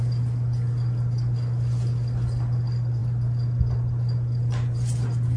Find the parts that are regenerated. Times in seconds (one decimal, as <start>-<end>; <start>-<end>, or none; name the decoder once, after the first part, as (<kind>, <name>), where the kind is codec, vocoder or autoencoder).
none